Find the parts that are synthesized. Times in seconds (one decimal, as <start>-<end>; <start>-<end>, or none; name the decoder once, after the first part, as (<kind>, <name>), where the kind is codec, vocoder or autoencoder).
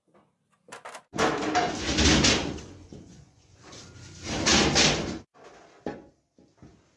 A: 2.4-3.8 (vocoder, Vocos)